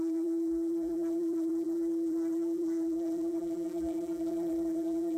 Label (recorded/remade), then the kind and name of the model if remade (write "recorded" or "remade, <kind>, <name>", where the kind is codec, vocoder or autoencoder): remade, vocoder, BigVGAN v2